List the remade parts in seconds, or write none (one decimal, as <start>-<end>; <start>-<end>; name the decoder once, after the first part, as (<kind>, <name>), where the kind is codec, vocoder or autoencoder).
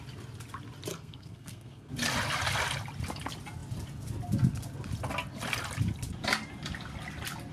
0.9-1.9 (codec, SNAC)